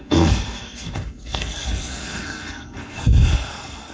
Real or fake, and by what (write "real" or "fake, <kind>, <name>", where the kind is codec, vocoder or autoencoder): fake, codec, SNAC